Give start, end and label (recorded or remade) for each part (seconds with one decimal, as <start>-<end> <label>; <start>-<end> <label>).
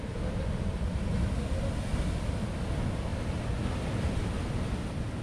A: 0.0-5.2 recorded